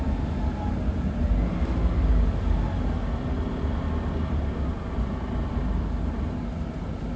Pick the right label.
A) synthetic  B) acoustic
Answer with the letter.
B